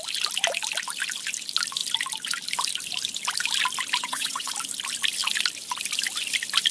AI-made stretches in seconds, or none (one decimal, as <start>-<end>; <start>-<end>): 4.0-4.5